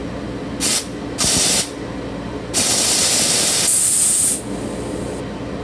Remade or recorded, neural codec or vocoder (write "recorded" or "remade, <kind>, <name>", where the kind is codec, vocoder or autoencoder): recorded